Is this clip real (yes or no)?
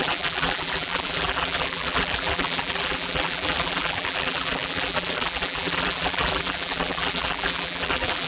no